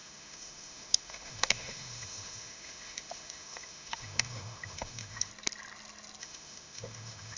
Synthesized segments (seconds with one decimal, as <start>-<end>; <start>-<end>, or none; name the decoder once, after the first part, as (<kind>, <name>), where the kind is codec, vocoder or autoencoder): 0.0-5.3 (autoencoder, DAC-VAE); 6.2-7.4